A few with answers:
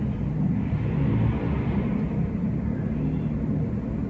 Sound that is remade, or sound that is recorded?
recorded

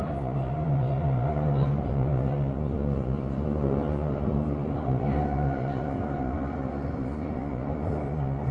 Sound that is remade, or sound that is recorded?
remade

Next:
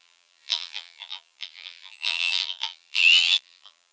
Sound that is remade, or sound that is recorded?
remade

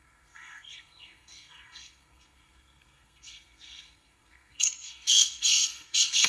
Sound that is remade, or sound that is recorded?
remade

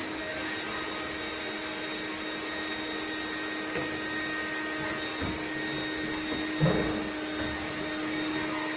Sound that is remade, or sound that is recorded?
recorded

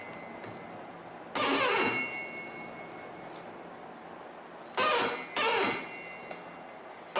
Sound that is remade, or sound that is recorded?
recorded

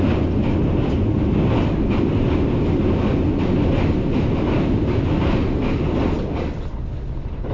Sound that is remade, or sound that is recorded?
recorded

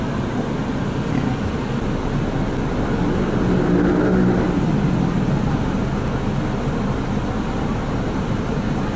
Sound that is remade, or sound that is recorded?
recorded